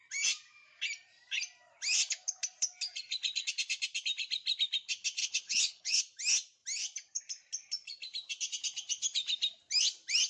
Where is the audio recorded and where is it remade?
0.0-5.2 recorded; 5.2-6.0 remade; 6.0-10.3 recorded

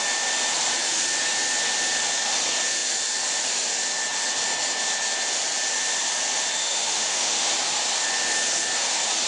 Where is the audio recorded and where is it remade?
0.0-6.6 recorded; 6.6-7.5 remade; 7.5-9.3 recorded

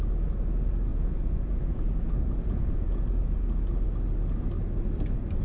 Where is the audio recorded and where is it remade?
0.0-0.9 recorded; 0.9-3.0 remade; 3.0-5.4 recorded

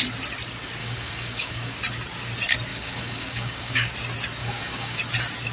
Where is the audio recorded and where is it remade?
0.0-0.8 recorded; 0.8-1.8 remade; 1.8-2.7 recorded; 2.7-3.9 remade; 3.9-4.4 recorded; 4.4-5.0 remade; 5.0-5.5 recorded

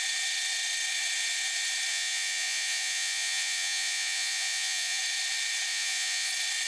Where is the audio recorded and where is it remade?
0.0-1.9 recorded; 1.9-5.0 remade; 5.0-5.7 recorded; 5.7-6.3 remade; 6.3-6.7 recorded

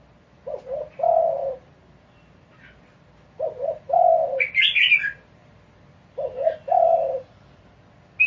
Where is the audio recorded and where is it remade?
0.0-8.3 recorded

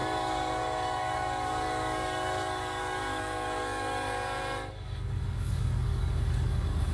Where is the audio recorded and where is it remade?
0.0-6.9 remade

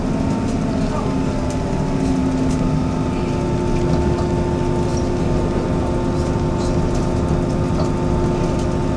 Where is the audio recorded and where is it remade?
0.0-9.0 recorded